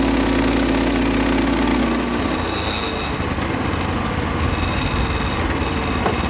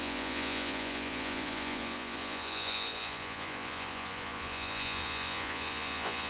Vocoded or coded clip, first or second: second